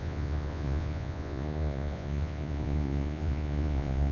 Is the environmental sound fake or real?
fake